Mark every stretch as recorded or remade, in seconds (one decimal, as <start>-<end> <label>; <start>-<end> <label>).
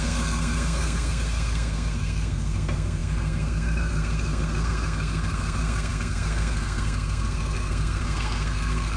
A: 0.0-9.0 remade